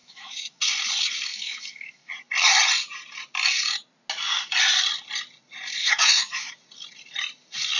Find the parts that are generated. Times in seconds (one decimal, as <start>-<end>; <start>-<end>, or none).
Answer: 0.0-0.6; 1.3-2.1; 5.8-6.5